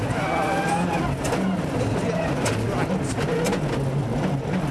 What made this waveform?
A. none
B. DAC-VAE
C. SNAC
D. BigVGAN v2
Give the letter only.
A